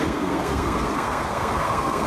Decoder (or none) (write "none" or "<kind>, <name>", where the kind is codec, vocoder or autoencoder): codec, SNAC